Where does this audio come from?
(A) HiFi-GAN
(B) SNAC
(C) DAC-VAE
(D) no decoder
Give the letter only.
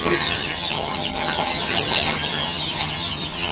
A